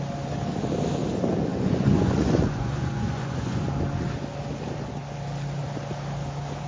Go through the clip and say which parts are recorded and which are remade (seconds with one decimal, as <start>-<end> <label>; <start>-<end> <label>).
0.0-1.5 recorded; 1.5-3.7 remade; 3.7-6.7 recorded